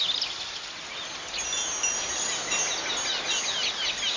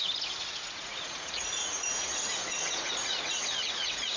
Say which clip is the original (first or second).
first